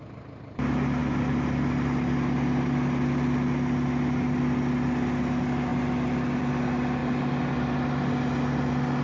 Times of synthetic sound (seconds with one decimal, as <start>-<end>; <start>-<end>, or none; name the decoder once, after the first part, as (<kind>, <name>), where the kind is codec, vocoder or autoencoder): none